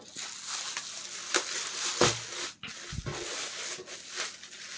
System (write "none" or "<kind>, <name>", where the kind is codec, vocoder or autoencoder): none